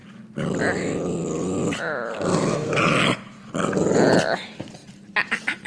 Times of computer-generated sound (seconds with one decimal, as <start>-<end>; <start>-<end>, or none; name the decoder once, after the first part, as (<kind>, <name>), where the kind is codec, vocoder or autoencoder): 2.1-2.8 (codec, SNAC)